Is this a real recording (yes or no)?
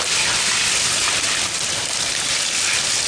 yes